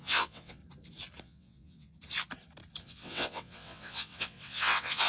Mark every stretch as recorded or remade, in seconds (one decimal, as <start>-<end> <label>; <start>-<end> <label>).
0.0-0.6 remade; 0.6-1.2 recorded; 1.2-1.9 remade; 1.9-2.8 recorded; 2.8-5.1 remade